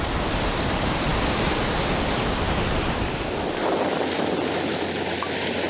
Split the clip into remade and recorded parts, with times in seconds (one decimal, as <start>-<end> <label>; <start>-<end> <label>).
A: 0.0-1.1 recorded; 1.1-4.5 remade; 4.5-5.7 recorded

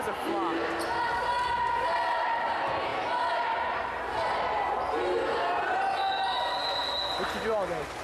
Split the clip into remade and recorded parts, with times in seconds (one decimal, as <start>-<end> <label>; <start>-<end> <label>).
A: 0.0-8.0 recorded

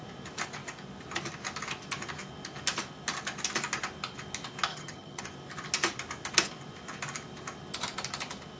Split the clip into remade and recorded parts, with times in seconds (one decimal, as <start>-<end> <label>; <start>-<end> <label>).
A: 0.0-4.7 recorded; 4.7-5.2 remade; 5.2-8.6 recorded

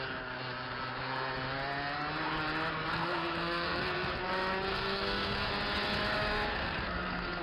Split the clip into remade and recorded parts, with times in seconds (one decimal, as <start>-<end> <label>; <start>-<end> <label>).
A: 0.0-2.9 recorded; 2.9-4.2 remade; 4.2-4.7 recorded; 4.7-5.5 remade; 5.5-6.5 recorded; 6.5-7.4 remade

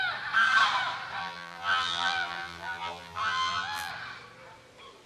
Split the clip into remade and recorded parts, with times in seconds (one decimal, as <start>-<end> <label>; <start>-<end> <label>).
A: 0.0-1.2 recorded; 1.2-3.9 remade; 3.9-5.1 recorded

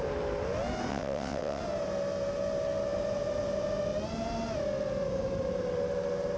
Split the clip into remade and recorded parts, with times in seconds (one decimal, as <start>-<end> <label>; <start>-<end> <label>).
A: 0.0-0.9 recorded; 0.9-1.6 remade; 1.6-6.4 recorded

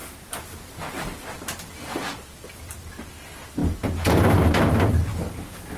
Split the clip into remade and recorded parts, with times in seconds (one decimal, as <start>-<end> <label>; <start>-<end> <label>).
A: 0.0-5.8 recorded

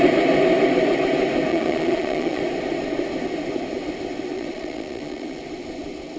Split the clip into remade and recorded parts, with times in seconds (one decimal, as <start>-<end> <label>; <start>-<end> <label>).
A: 0.0-1.5 recorded; 1.5-2.4 remade; 2.4-4.3 recorded; 4.3-5.4 remade; 5.4-6.2 recorded